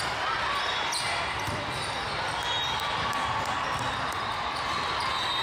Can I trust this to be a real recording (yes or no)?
yes